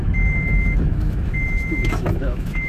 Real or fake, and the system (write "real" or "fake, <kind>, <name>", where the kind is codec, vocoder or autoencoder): fake, autoencoder, DAC-VAE